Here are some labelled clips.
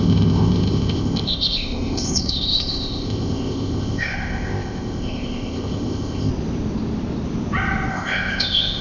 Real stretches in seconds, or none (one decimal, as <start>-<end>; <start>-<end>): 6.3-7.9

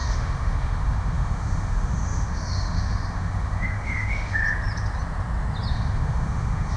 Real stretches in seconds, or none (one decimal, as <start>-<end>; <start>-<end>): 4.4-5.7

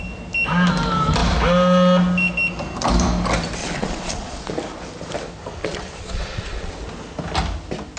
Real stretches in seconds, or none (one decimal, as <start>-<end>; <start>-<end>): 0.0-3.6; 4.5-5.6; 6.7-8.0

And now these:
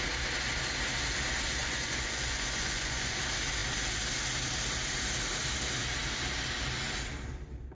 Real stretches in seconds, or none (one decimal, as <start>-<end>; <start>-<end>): 0.0-1.6; 3.2-7.7